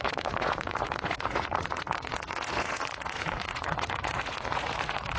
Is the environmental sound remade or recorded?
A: remade